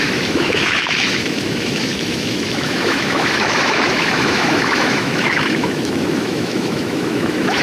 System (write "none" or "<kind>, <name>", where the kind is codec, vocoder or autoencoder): autoencoder, DAC-VAE